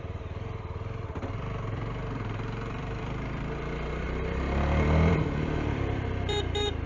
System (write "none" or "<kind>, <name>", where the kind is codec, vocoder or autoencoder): vocoder, BigVGAN v2